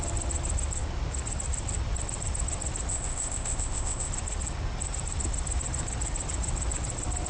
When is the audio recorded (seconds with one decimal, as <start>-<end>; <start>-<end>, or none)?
0.0-2.9; 4.1-7.3